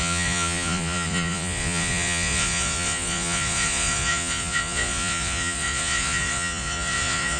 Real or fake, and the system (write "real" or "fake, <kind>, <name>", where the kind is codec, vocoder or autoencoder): fake, vocoder, Vocos